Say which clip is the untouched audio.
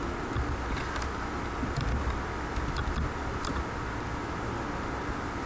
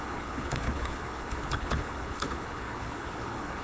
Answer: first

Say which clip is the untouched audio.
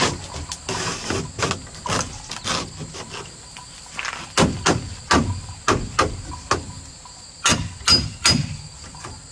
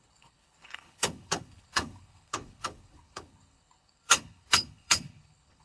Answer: first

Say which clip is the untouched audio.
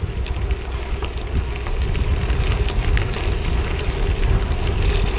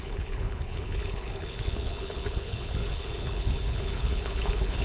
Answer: first